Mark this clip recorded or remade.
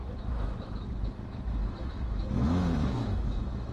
remade